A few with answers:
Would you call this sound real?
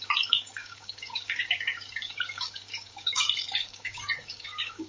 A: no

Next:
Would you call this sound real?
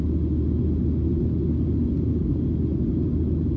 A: yes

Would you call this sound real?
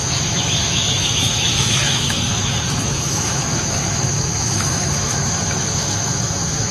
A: no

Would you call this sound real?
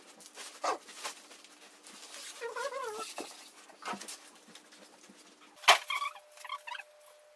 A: yes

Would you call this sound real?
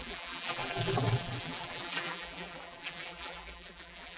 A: no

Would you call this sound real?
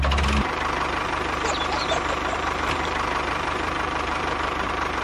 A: no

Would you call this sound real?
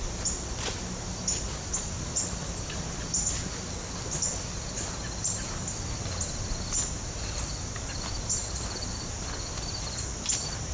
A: yes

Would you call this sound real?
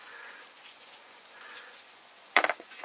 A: no